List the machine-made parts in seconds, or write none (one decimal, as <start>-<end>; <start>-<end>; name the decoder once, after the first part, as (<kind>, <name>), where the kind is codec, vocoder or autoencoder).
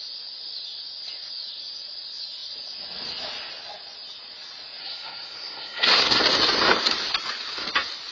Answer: 4.8-6.2 (codec, SNAC)